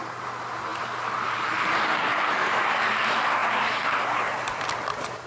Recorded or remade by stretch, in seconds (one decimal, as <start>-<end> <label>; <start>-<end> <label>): 0.0-5.3 recorded